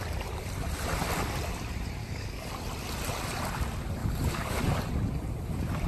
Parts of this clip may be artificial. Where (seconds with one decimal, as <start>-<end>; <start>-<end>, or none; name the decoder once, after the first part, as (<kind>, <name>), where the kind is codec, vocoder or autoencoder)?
2.0-2.5 (codec, DAC); 4.0-4.6